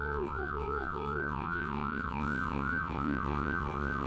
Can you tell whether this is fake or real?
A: fake